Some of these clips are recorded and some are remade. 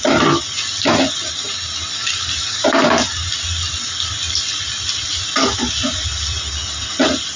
recorded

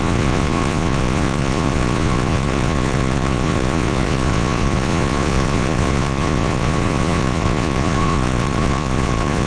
remade